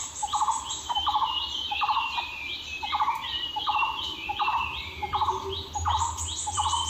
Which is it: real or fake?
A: fake